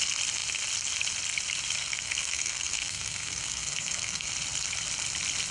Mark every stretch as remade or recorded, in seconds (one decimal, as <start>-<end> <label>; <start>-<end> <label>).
0.0-1.8 recorded; 1.8-4.3 remade; 4.3-5.5 recorded